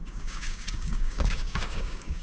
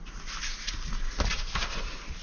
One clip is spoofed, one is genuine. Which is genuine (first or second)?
second